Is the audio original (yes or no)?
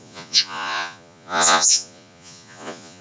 no